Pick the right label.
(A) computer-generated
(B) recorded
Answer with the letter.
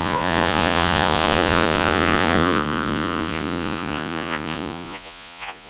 A